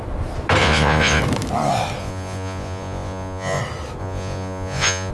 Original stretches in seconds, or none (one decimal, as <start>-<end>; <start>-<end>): 0.0-0.6; 1.2-2.0; 3.6-4.0